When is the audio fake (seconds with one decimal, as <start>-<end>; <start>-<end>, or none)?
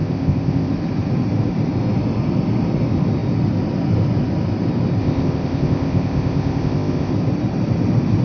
0.0-0.7; 5.0-7.1